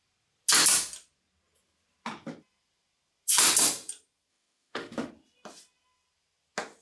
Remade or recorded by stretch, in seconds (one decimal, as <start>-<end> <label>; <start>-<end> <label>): 0.0-4.3 recorded; 4.3-5.1 remade; 5.1-6.8 recorded